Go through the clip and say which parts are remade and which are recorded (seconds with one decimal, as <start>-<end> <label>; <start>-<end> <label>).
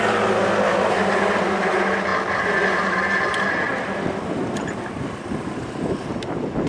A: 0.0-6.7 recorded